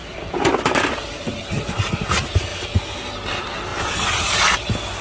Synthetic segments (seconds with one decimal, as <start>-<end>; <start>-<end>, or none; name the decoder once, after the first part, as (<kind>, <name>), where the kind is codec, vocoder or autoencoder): none